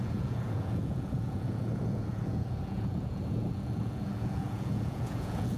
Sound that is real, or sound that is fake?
fake